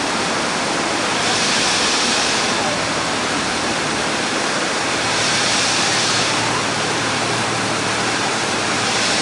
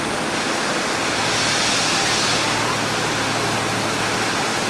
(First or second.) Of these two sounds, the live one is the second